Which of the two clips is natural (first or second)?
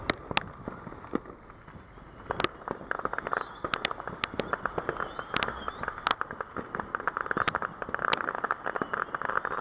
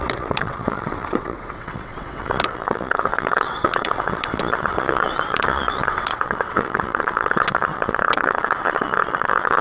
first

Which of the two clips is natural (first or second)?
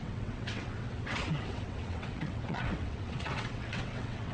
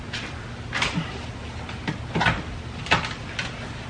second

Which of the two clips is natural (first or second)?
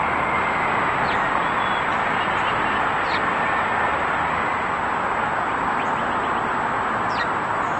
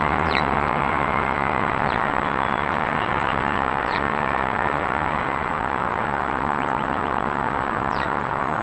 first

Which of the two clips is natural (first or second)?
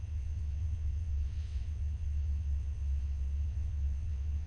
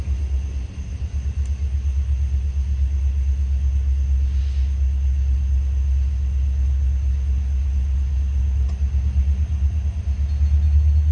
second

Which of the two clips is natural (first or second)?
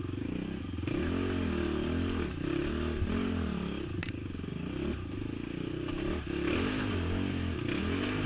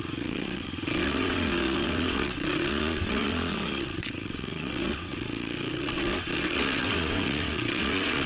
first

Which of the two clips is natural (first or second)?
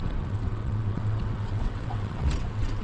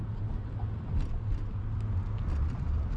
second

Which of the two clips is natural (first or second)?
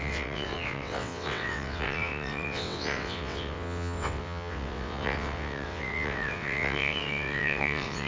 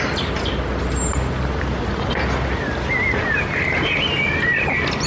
second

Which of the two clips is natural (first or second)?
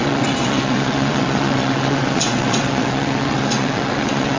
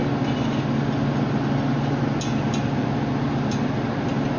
second